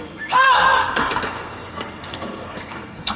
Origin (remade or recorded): remade